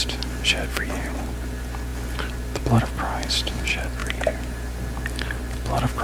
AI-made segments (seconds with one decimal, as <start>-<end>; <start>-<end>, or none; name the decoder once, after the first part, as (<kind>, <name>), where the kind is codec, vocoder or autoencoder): none